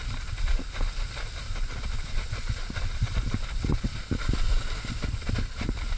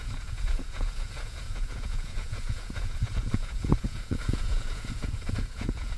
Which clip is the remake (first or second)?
second